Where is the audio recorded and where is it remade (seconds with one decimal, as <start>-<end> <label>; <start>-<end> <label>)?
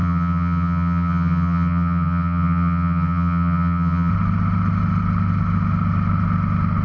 0.0-4.1 remade; 4.1-6.8 recorded